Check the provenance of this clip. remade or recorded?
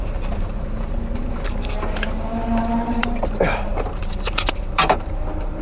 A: remade